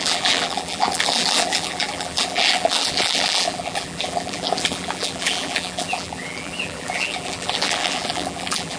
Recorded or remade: remade